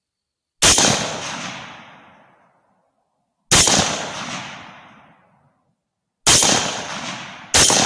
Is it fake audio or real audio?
real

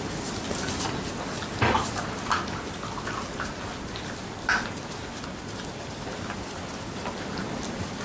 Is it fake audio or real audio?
real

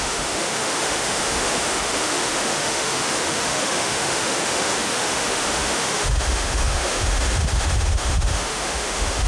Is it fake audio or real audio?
fake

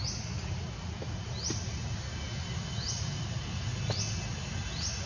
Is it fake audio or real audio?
real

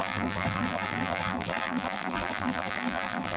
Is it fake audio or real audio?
fake